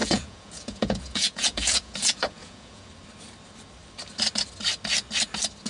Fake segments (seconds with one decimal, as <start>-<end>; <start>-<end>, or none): 0.0-2.9